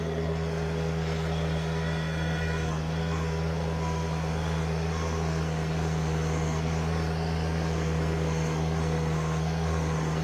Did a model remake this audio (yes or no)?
yes